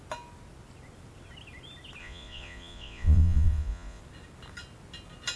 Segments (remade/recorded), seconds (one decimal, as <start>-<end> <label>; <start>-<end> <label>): 0.0-2.0 recorded; 2.0-4.0 remade; 4.0-5.4 recorded